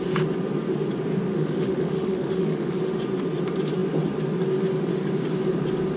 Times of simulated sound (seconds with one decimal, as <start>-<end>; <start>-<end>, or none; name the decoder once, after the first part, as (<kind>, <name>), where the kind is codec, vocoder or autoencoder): 1.3-2.8 (autoencoder, DAC-VAE)